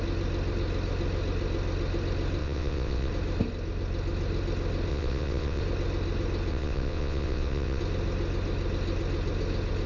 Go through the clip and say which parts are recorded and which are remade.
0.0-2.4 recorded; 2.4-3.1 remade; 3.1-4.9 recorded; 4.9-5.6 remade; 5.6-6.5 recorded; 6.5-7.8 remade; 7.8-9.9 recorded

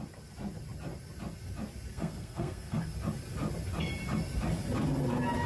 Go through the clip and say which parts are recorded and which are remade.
0.0-1.9 recorded; 1.9-2.8 remade; 2.8-5.5 recorded

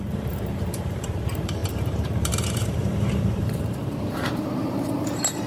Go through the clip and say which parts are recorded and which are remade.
0.0-5.5 remade

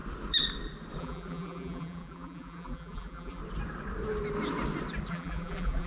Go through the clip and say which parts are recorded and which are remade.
0.0-1.0 recorded; 1.0-3.4 remade; 3.4-5.1 recorded; 5.1-5.9 remade

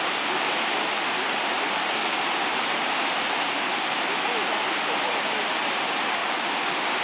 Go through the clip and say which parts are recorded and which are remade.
0.0-6.2 recorded; 6.2-7.0 remade

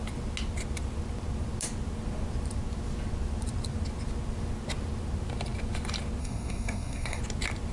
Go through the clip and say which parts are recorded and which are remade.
0.0-6.2 recorded; 6.2-7.2 remade; 7.2-7.7 recorded